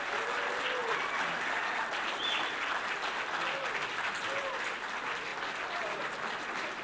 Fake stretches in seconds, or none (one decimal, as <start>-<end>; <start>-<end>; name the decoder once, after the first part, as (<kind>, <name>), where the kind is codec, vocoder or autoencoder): none